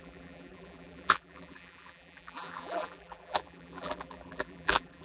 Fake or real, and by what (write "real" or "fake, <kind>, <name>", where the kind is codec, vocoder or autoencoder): fake, vocoder, BigVGAN v2